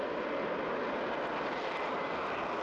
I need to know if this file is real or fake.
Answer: real